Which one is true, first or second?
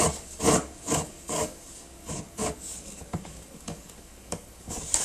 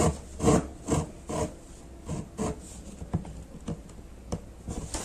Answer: second